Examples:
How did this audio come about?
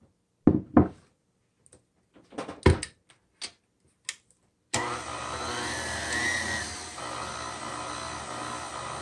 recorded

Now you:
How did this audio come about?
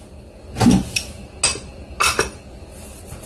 recorded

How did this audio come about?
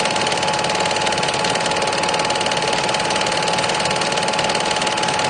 recorded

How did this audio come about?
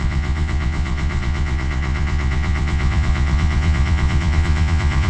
remade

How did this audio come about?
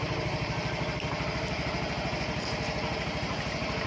recorded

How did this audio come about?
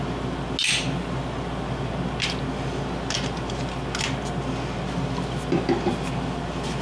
recorded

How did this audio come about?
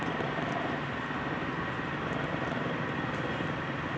recorded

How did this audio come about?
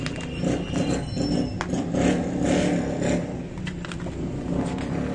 recorded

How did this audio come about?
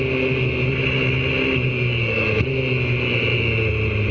recorded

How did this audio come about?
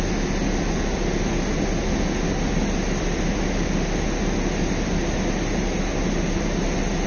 recorded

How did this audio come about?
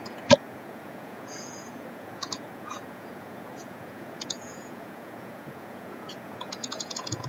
remade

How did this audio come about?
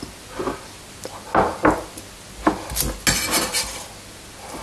recorded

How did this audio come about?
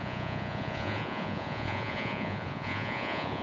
remade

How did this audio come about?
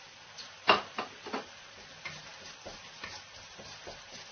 recorded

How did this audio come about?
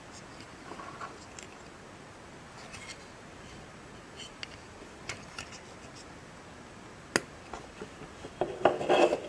recorded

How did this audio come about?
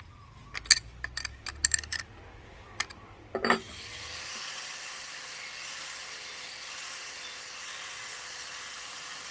recorded